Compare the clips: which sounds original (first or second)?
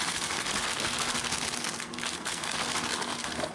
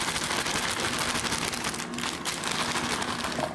second